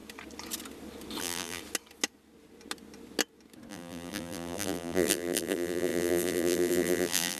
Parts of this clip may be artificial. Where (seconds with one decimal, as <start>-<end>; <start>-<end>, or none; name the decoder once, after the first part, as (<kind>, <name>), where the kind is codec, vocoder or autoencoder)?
1.2-1.6 (vocoder, BigVGAN v2); 3.7-7.4